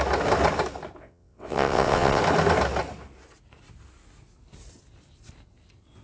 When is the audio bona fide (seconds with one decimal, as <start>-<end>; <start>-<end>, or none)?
0.0-1.0; 2.2-6.0